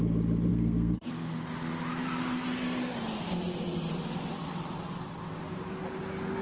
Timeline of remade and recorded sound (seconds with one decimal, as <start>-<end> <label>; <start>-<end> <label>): 0.0-0.5 recorded; 0.5-1.1 remade; 1.1-6.4 recorded